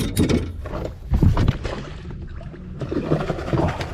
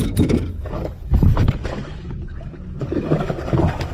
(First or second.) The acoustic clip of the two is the first